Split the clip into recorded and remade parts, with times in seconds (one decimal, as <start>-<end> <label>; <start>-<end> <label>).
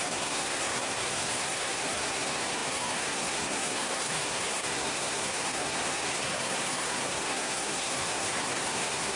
0.0-9.2 remade